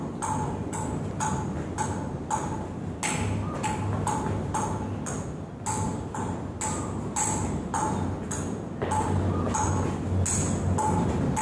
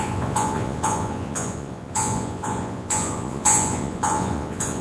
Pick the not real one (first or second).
second